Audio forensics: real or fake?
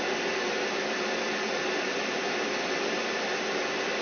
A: real